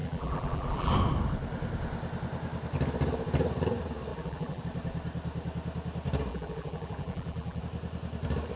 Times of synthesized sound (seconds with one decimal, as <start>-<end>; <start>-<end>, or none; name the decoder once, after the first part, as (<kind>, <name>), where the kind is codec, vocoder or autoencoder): 0.0-0.9 (vocoder, BigVGAN v2); 4.1-4.6; 6.3-7.6